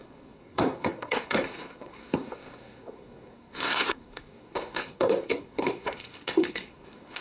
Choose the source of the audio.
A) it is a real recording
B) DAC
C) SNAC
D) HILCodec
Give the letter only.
C